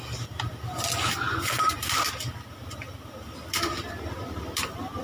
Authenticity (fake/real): real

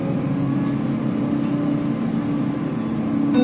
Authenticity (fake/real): real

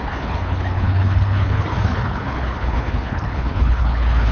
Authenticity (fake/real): fake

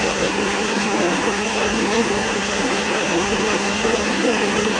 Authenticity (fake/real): fake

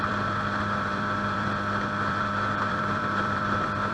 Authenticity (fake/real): fake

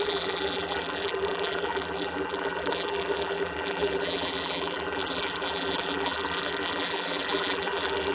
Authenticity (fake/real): fake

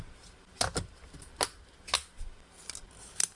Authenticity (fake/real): real